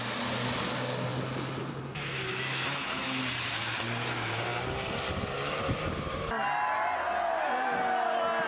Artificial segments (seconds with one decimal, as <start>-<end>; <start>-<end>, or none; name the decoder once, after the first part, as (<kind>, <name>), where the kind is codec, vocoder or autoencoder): 2.3-3.2 (autoencoder, DAC-VAE)